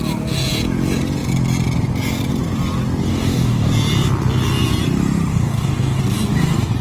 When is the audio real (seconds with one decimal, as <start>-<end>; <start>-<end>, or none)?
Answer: 0.0-3.1; 3.7-5.3; 6.0-6.8